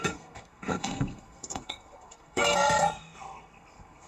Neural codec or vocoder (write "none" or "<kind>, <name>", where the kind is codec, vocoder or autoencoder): codec, SNAC